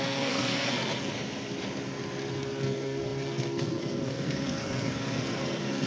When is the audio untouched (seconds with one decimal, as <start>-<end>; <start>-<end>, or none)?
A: 1.1-2.3